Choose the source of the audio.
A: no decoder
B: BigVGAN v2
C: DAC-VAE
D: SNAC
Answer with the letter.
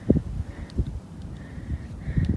A